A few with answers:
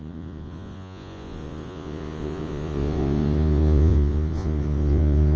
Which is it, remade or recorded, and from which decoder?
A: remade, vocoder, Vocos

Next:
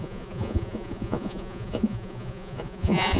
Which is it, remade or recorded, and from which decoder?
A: remade, vocoder, Vocos